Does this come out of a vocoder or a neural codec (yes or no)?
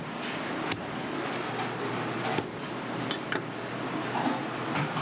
no